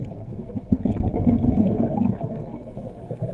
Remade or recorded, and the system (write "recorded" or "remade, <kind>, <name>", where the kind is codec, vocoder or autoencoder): remade, codec, SNAC